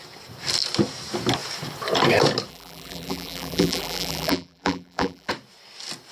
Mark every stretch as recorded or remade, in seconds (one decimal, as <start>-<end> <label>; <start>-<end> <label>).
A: 0.0-2.5 recorded; 2.5-5.3 remade; 5.3-6.1 recorded